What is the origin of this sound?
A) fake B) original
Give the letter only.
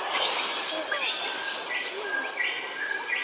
B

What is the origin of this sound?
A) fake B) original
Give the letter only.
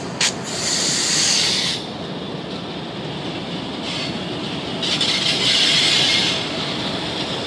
B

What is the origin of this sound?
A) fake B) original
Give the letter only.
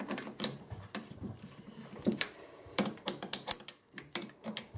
A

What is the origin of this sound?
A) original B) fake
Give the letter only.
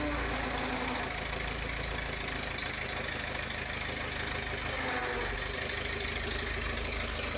A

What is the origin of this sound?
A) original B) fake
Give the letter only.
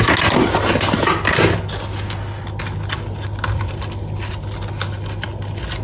A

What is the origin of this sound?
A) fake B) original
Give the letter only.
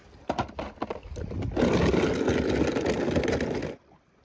B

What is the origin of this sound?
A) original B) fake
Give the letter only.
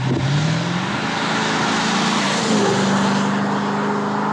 A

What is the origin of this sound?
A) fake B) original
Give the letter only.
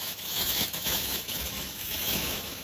A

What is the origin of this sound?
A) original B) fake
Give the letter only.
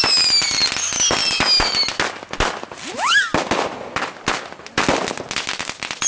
A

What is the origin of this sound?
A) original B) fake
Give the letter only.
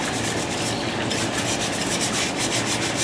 A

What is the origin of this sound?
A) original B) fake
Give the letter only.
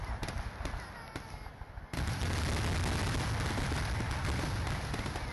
A